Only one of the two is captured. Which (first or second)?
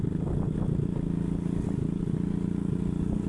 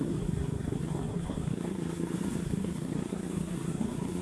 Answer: first